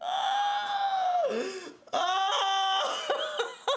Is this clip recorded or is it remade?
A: recorded